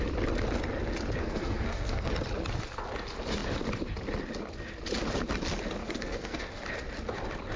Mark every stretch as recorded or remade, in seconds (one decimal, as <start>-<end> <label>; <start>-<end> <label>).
0.0-1.2 recorded; 1.2-2.1 remade; 2.1-5.8 recorded; 5.8-6.6 remade; 6.6-7.6 recorded